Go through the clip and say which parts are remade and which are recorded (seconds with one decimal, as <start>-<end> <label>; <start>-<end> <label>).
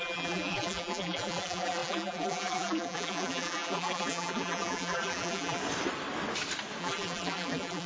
0.0-5.6 remade; 5.6-6.8 recorded; 6.8-7.9 remade